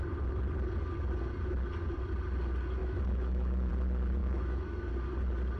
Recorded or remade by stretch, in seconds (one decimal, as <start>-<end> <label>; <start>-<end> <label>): 0.0-2.8 recorded; 2.8-3.7 remade; 3.7-4.2 recorded; 4.2-4.9 remade; 4.9-5.6 recorded